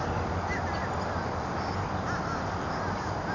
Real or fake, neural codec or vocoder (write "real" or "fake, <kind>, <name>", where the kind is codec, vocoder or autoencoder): real